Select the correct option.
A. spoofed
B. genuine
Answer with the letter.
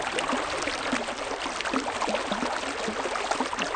B